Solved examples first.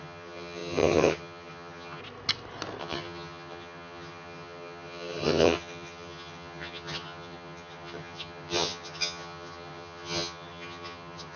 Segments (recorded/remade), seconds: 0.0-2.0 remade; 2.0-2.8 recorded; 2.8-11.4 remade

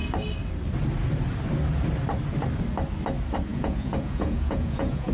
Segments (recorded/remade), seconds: 0.0-3.5 recorded; 3.5-5.1 remade

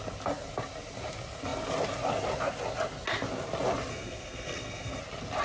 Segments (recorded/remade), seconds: 0.0-3.9 recorded; 3.9-5.0 remade; 5.0-5.4 recorded